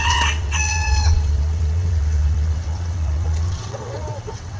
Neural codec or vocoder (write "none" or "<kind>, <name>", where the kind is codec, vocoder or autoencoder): vocoder, WaveNeXt